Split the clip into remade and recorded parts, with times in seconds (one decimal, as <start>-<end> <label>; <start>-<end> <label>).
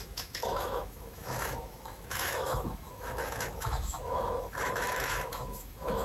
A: 0.0-6.0 remade